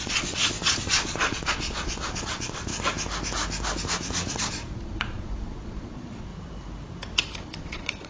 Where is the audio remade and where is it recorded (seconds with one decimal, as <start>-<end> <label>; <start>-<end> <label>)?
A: 0.0-2.7 remade; 2.7-4.5 recorded; 4.5-6.3 remade; 6.3-7.5 recorded; 7.5-8.1 remade